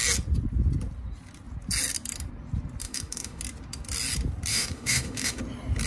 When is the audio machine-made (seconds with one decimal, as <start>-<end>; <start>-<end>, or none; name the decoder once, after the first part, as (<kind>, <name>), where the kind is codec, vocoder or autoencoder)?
2.8-3.4 (autoencoder, DAC-VAE); 4.5-5.4